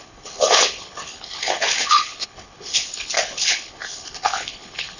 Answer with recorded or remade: remade